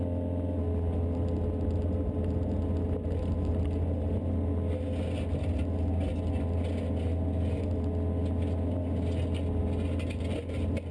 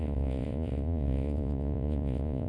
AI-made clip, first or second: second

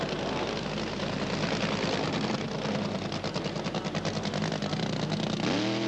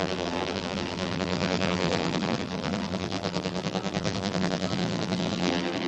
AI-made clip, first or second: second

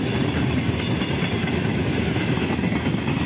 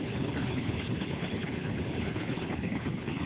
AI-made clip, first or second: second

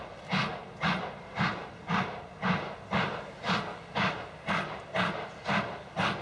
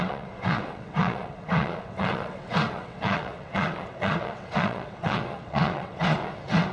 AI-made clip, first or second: second